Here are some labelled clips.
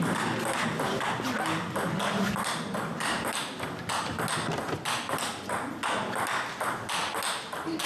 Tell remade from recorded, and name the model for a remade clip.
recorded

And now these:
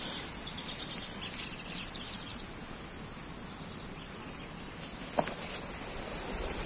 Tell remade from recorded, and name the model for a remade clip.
recorded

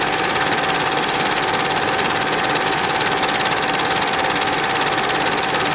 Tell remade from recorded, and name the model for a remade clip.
recorded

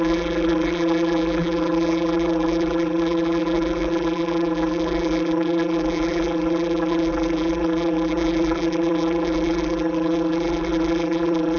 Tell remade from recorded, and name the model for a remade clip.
remade, vocoder, BigVGAN v2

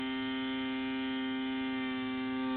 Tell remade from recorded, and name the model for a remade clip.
recorded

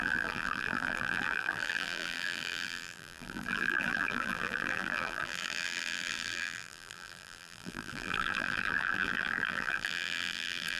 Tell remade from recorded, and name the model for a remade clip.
remade, vocoder, BigVGAN v2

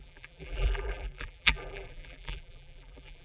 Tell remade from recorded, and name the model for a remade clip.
remade, vocoder, BigVGAN v2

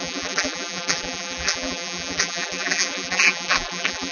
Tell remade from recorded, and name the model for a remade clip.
remade, vocoder, BigVGAN v2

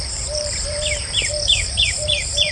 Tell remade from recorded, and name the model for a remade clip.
remade, vocoder, BigVGAN v2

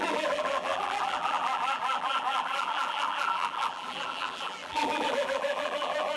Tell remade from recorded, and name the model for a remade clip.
remade, vocoder, BigVGAN v2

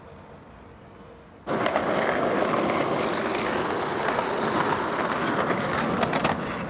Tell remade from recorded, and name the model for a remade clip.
recorded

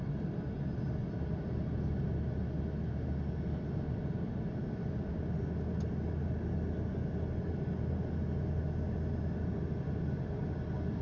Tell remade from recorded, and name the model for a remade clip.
recorded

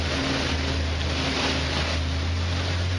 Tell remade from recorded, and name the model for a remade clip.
recorded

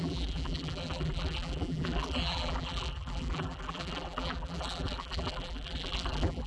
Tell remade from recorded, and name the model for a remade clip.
remade, vocoder, BigVGAN v2